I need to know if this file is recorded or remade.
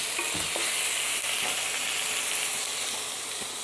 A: recorded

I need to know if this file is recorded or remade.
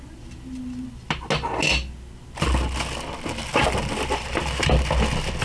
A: recorded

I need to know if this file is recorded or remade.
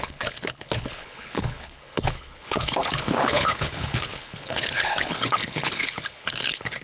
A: remade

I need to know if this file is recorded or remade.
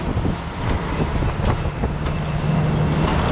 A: recorded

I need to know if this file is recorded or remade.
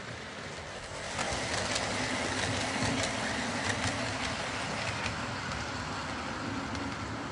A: recorded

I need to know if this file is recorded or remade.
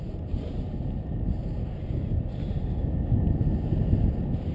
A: recorded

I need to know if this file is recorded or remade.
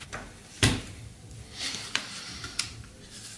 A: recorded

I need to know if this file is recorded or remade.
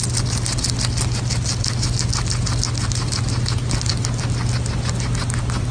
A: recorded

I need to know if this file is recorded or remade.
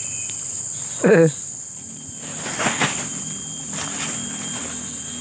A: recorded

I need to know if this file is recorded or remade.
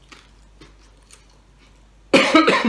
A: recorded